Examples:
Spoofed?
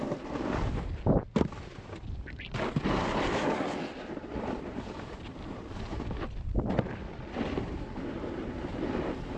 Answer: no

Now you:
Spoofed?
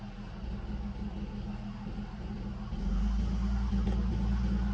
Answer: no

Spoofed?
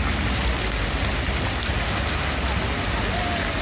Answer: no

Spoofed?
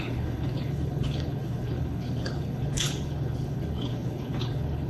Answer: yes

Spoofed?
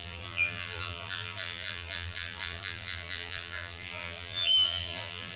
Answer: yes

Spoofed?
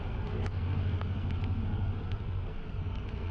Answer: yes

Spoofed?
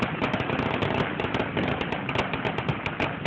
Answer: no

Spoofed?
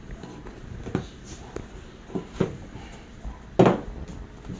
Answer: no